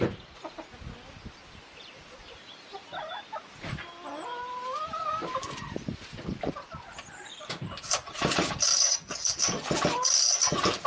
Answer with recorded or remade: recorded